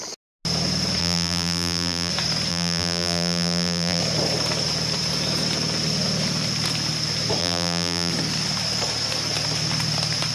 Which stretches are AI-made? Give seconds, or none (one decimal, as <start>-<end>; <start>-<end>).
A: 1.0-2.1; 2.5-4.0; 7.4-8.1

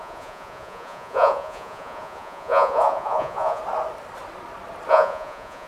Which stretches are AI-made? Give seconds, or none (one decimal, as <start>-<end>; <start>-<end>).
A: 0.0-3.6; 4.9-5.7

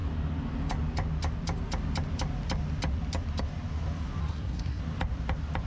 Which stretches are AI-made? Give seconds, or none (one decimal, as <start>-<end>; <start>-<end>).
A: 4.2-4.8

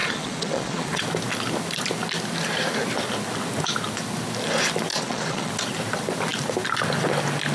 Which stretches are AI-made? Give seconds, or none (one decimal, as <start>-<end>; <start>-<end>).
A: 0.0-1.0; 4.9-5.5

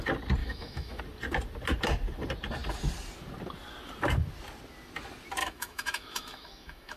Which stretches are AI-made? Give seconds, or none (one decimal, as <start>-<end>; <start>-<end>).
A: 0.4-1.0; 5.4-7.0